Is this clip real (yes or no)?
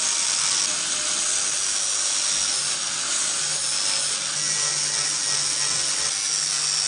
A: yes